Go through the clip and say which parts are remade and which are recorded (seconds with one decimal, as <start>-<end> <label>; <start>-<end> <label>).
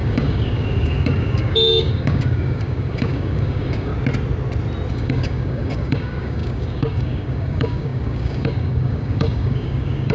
0.0-3.9 remade; 3.9-4.9 recorded; 4.9-10.1 remade